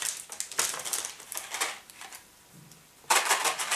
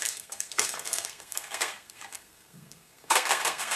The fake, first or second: second